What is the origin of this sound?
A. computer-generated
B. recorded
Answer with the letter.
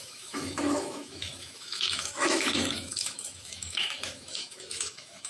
A